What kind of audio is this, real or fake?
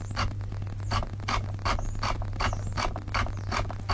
real